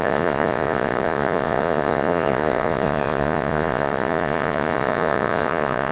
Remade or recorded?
remade